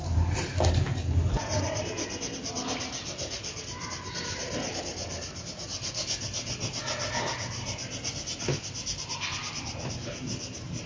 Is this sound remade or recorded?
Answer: recorded